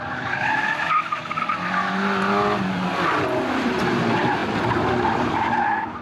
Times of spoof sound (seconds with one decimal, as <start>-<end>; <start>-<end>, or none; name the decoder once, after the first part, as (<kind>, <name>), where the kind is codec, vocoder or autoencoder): none